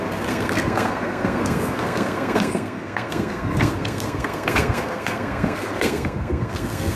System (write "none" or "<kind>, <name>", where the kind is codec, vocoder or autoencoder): codec, SNAC